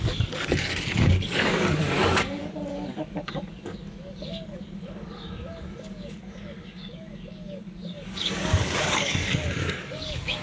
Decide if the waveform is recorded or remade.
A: remade